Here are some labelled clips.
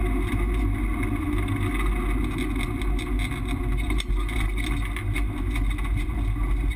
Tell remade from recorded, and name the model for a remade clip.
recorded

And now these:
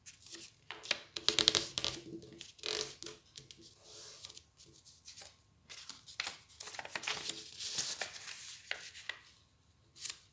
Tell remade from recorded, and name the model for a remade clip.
recorded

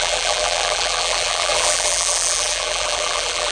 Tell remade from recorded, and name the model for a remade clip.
remade, vocoder, BigVGAN v2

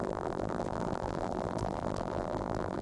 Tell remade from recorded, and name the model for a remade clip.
remade, vocoder, BigVGAN v2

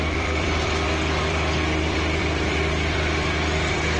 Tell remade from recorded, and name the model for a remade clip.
remade, vocoder, BigVGAN v2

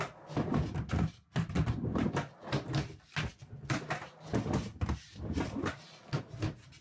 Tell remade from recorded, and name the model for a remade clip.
recorded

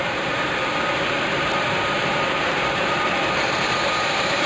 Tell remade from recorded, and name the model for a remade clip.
remade, vocoder, BigVGAN v2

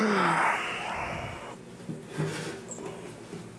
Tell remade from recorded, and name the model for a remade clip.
recorded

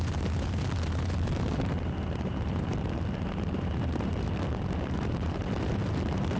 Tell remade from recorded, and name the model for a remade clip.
remade, vocoder, BigVGAN v2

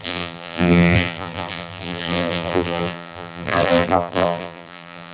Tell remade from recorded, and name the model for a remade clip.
remade, vocoder, BigVGAN v2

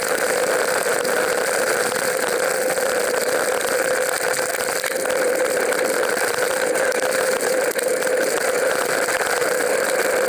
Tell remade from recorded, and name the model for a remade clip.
recorded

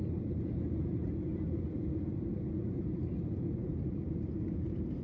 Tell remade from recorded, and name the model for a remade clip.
remade, vocoder, BigVGAN v2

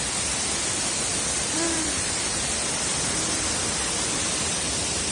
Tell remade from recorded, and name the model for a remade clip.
remade, vocoder, BigVGAN v2